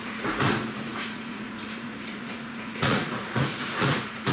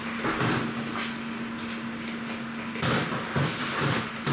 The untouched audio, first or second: second